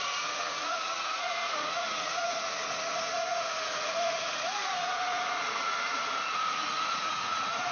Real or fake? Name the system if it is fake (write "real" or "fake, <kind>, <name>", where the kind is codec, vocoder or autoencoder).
fake, vocoder, Vocos